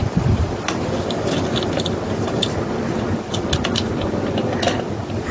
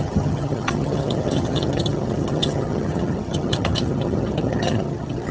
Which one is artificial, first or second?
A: second